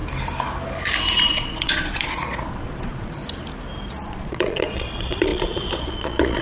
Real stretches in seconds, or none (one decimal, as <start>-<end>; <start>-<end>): 0.0-1.2; 3.2-3.9